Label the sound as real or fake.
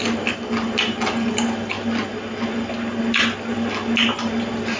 real